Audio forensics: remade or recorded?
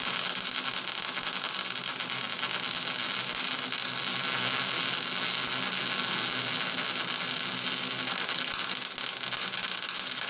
recorded